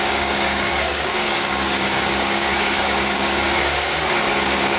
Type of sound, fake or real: fake